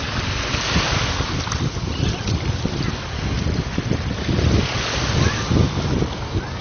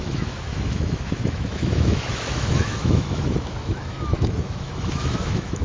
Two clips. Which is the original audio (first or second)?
first